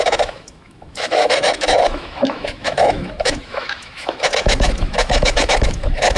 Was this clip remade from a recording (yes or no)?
yes